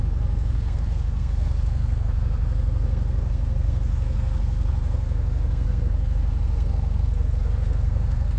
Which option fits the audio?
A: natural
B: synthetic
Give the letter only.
B